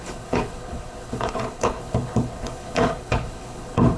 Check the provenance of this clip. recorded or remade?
remade